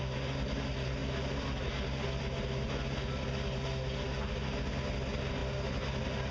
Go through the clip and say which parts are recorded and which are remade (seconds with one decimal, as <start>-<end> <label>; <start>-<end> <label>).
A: 0.0-6.3 recorded